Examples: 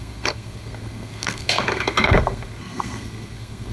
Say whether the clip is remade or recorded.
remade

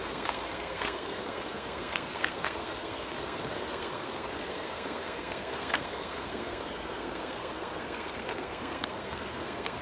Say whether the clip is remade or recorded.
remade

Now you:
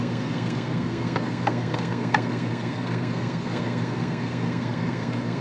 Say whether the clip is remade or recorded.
remade